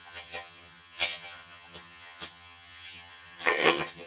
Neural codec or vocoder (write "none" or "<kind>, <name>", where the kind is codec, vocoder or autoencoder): vocoder, HiFi-GAN